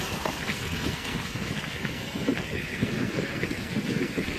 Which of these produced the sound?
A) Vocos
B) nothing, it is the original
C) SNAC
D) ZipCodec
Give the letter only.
C